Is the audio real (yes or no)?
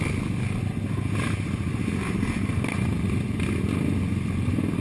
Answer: yes